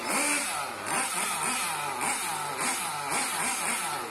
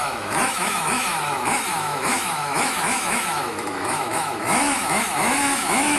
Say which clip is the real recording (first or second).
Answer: first